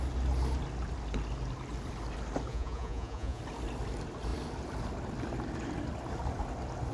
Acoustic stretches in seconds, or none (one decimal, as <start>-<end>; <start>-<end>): 0.0-2.5; 3.4-6.9